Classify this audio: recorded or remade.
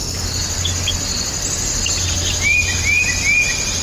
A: recorded